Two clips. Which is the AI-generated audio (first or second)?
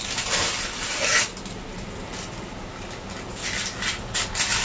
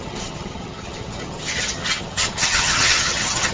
second